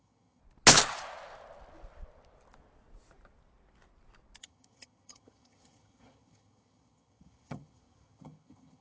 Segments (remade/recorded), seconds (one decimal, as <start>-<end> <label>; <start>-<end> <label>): 0.0-0.4 remade; 0.4-4.4 recorded; 4.4-8.8 remade

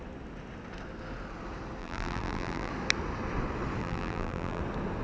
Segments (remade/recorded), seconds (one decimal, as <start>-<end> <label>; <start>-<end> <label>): 0.0-1.8 recorded; 1.8-2.7 remade; 2.7-3.8 recorded; 3.8-4.6 remade; 4.6-5.0 recorded

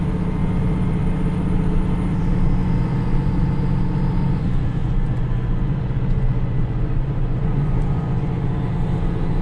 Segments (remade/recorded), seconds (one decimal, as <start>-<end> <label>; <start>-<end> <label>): 0.0-2.6 recorded; 2.6-3.3 remade; 3.3-4.8 recorded; 4.8-8.7 remade; 8.7-9.4 recorded

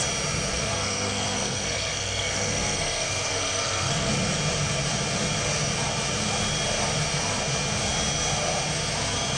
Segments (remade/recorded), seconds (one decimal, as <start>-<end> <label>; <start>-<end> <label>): 0.0-0.5 recorded; 0.5-4.1 remade; 4.1-9.4 recorded

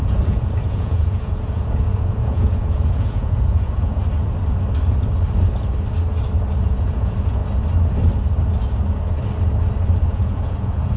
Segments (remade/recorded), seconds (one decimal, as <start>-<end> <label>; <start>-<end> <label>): 0.0-4.0 remade; 4.0-6.6 recorded; 6.6-7.4 remade; 7.4-10.1 recorded; 10.1-11.0 remade

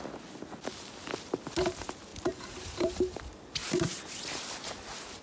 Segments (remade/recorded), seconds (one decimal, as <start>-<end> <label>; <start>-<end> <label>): 0.0-2.1 recorded; 2.1-3.2 remade; 3.2-5.2 recorded